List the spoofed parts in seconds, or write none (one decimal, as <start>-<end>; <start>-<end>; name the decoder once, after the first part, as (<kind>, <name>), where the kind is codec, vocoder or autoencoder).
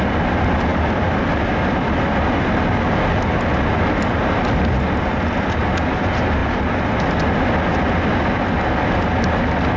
none